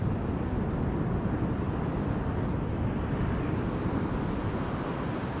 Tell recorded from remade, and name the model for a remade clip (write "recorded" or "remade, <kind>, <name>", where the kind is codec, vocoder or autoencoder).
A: recorded